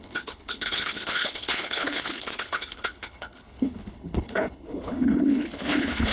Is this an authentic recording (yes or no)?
no